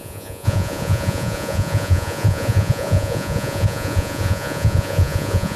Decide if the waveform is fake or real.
fake